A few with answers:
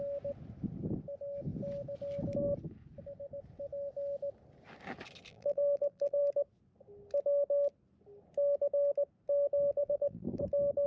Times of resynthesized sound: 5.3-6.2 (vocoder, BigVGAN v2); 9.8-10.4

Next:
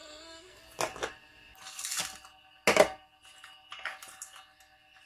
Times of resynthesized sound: 0.0-0.6 (codec, SNAC)

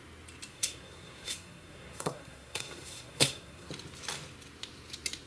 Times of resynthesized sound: 0.5-3.7 (codec, SNAC)

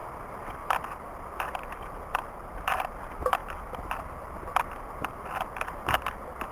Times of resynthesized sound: none